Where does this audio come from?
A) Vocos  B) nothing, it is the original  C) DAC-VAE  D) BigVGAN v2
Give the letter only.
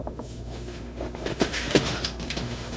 C